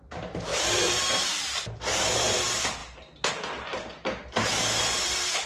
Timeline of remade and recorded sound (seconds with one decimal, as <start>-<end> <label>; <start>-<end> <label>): 0.0-3.7 remade; 3.7-4.8 recorded; 4.8-5.5 remade